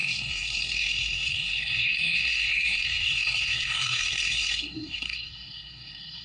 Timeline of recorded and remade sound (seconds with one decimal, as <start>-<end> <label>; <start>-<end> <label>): 0.0-6.2 remade